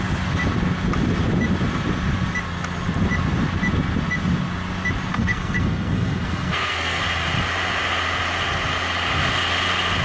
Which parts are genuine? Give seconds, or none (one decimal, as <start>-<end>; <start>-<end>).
0.0-5.1; 7.0-10.0